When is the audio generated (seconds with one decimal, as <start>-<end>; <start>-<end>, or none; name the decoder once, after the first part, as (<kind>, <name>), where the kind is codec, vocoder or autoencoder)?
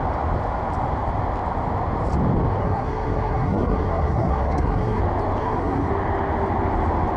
2.6-5.0 (codec, SNAC); 5.4-5.9